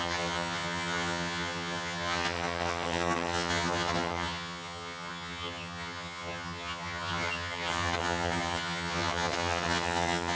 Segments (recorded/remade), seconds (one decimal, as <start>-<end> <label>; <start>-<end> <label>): 0.0-10.3 remade